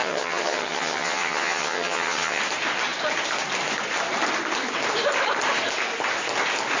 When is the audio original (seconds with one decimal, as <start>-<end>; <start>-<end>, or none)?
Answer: 2.4-6.8